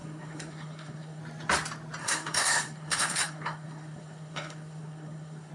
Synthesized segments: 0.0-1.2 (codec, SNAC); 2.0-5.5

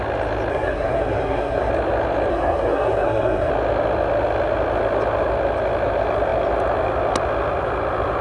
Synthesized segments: 0.5-1.7 (codec, SNAC); 2.3-3.5